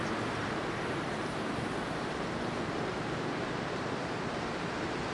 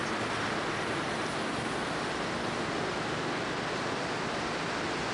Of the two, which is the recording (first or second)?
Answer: second